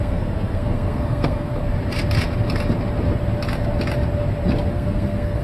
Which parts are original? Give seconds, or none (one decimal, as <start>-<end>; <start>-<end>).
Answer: 1.5-4.7